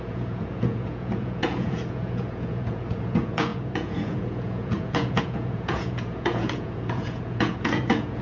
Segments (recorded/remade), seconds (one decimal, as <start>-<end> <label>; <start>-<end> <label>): 0.0-8.2 remade